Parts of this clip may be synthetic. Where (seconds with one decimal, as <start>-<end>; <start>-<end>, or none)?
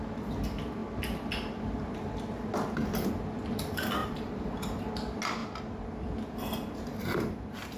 4.0-4.9